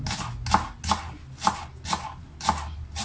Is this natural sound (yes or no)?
yes